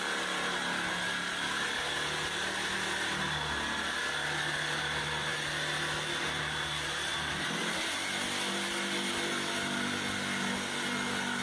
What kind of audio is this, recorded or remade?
recorded